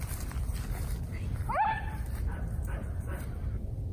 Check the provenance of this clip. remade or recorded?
recorded